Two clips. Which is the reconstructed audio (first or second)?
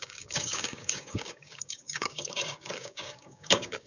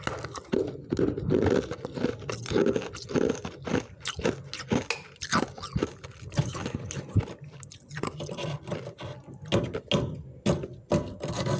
first